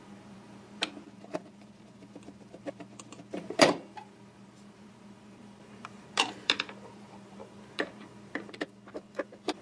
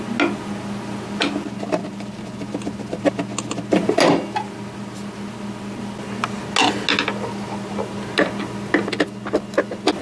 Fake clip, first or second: first